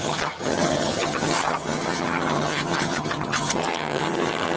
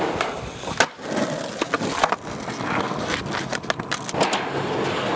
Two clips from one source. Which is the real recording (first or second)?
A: second